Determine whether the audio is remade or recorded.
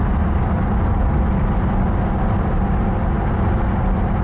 recorded